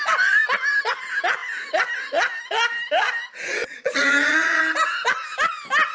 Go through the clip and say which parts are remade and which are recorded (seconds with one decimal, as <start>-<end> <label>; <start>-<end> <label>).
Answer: 0.0-3.6 recorded; 3.6-4.6 remade; 4.6-5.9 recorded